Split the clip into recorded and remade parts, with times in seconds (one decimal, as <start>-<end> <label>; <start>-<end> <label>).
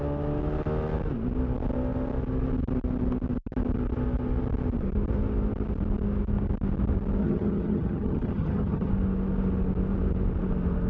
0.0-7.2 recorded; 7.2-8.9 remade; 8.9-10.9 recorded